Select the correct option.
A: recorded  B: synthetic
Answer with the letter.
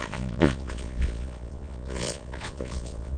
B